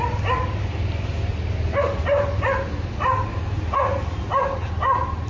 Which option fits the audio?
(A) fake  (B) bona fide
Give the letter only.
B